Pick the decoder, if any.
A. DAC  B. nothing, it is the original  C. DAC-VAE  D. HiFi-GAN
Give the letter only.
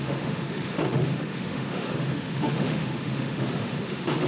C